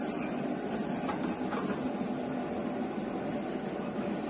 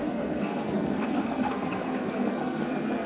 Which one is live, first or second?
first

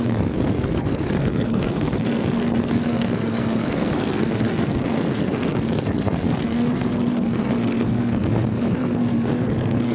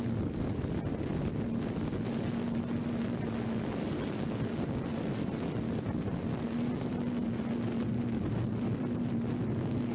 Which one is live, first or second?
second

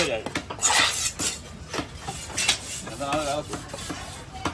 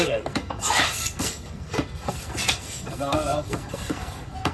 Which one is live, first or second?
first